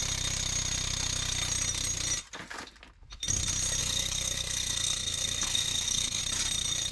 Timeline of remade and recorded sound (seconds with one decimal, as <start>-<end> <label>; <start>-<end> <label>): 0.0-3.8 recorded; 3.8-6.2 remade; 6.2-6.9 recorded